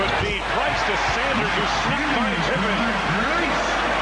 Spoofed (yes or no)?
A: no